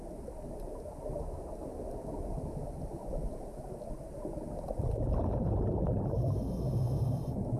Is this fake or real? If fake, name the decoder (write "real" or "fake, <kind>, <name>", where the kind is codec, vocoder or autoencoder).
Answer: real